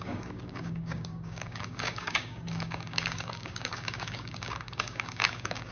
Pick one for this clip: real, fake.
fake